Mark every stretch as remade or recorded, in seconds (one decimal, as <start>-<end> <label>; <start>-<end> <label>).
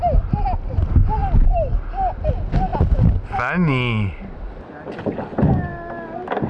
0.0-6.5 recorded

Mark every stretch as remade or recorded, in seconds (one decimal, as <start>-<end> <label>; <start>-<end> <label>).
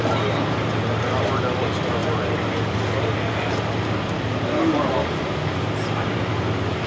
0.0-6.9 recorded